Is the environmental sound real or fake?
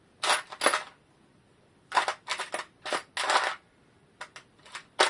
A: real